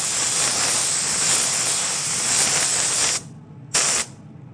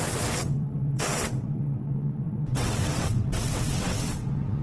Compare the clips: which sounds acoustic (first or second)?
first